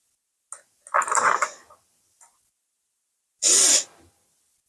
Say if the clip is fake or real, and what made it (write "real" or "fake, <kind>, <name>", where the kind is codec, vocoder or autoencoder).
real